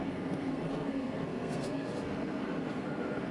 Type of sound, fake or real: fake